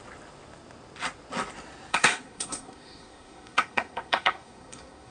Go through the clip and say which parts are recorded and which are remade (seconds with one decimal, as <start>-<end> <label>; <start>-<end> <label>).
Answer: 0.0-1.9 recorded; 1.9-5.1 remade